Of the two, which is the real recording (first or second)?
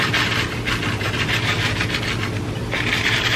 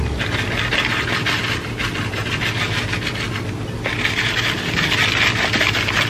second